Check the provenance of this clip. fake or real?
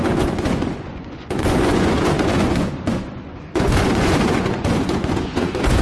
fake